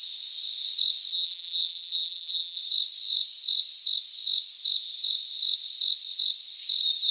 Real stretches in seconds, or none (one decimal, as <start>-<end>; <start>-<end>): 0.0-1.1; 2.6-7.1